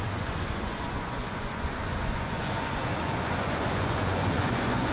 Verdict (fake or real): fake